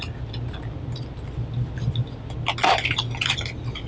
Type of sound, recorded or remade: recorded